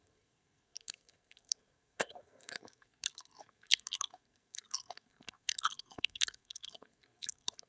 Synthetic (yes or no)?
yes